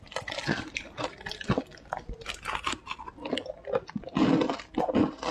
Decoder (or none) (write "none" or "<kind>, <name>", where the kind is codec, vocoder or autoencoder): none